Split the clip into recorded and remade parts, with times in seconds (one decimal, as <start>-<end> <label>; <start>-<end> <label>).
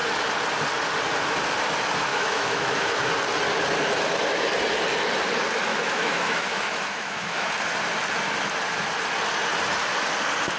0.0-2.1 recorded; 2.1-3.1 remade; 3.1-5.7 recorded; 5.7-7.5 remade; 7.5-10.6 recorded